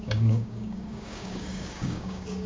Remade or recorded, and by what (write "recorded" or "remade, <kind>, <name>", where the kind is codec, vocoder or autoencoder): remade, codec, DAC